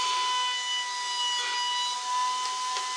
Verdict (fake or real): real